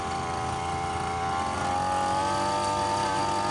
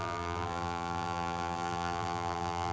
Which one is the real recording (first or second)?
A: first